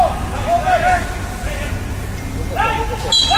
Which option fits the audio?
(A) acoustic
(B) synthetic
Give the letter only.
A